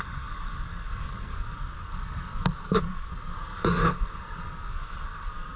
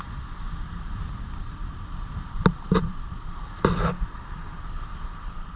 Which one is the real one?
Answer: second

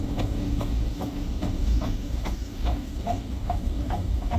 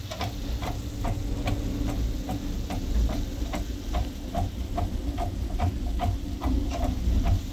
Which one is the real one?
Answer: second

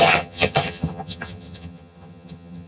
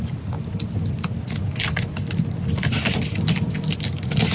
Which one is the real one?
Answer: second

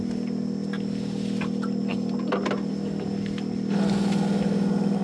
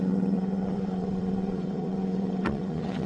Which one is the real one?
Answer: first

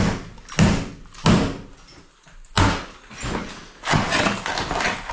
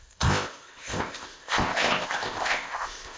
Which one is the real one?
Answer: first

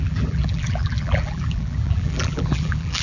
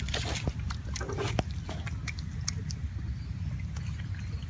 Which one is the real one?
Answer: second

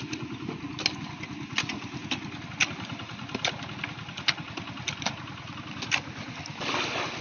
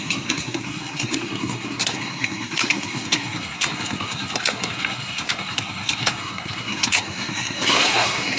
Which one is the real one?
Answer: first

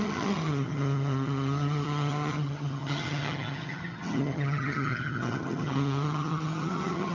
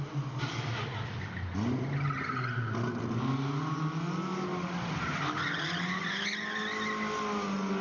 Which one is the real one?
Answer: second